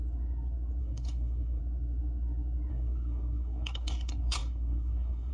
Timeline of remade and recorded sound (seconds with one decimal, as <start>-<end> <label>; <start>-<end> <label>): 0.0-0.8 recorded; 0.8-1.6 remade; 1.6-2.7 recorded; 2.7-5.3 remade